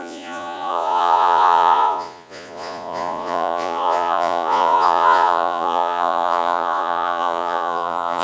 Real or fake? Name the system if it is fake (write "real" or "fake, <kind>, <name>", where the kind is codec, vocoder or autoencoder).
fake, vocoder, Vocos